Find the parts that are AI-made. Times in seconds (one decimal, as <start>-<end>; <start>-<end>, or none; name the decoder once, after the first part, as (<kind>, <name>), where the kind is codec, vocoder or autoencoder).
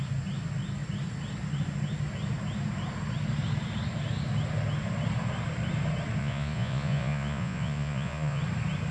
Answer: 6.2-8.4 (vocoder, Vocos)